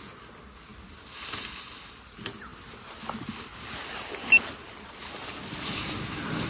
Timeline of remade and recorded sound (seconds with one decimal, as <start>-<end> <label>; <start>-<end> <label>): 0.0-6.5 recorded